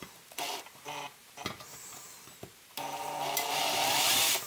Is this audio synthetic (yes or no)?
yes